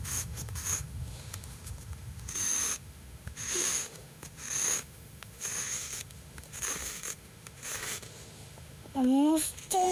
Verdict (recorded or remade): remade